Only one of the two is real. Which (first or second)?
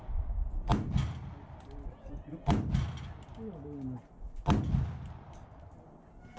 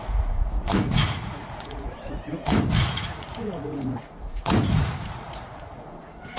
first